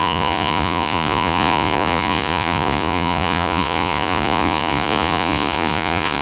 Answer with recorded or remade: remade